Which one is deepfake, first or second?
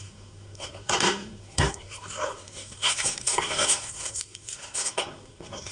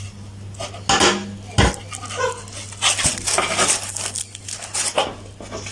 first